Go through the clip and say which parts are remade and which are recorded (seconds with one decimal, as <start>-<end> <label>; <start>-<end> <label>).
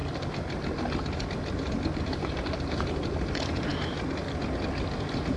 0.0-2.0 recorded; 2.0-3.7 remade; 3.7-5.4 recorded